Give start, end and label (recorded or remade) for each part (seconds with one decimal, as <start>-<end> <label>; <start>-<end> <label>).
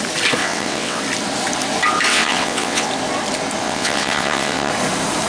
0.0-0.4 recorded; 0.4-1.0 remade; 1.0-2.1 recorded; 2.1-2.9 remade; 2.9-3.6 recorded; 3.6-4.7 remade; 4.7-5.3 recorded